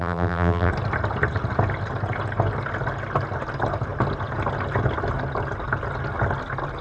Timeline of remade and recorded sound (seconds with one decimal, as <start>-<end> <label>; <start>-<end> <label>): 0.0-0.7 remade; 0.7-6.8 recorded